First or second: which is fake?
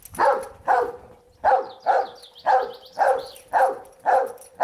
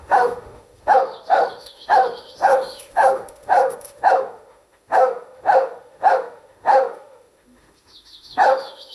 second